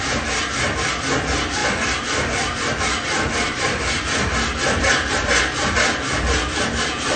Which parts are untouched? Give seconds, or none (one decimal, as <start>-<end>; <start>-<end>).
0.0-7.2